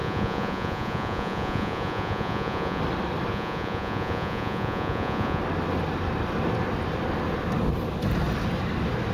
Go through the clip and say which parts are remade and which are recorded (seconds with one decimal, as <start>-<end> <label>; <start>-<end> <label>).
0.0-2.8 remade; 2.8-3.3 recorded; 3.3-5.4 remade; 5.4-9.1 recorded